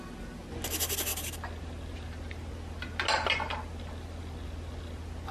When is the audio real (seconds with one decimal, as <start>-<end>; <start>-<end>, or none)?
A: 0.0-5.3